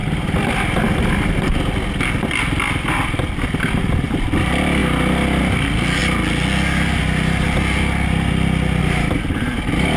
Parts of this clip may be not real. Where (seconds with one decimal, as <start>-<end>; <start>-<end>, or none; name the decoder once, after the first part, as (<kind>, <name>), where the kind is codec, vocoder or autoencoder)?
0.0-4.8 (vocoder, BigVGAN v2); 5.4-6.0; 8.8-10.0